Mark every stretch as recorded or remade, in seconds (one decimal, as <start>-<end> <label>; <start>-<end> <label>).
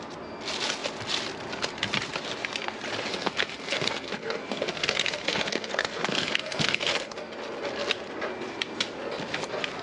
0.0-3.1 recorded; 3.1-7.3 remade; 7.3-9.8 recorded